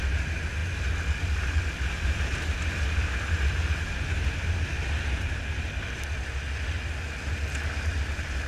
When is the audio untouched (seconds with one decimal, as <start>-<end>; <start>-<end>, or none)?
0.0-8.5